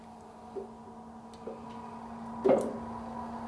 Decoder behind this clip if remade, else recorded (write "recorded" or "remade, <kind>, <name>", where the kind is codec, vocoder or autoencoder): recorded